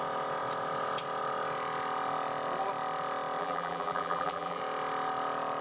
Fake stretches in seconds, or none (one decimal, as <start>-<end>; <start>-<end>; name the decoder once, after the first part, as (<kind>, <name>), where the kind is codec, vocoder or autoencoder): 3.4-4.6 (vocoder, BigVGAN v2)